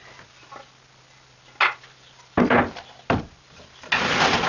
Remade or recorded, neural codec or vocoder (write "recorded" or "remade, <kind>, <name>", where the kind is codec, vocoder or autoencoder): recorded